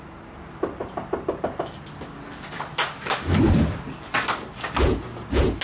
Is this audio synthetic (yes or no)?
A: no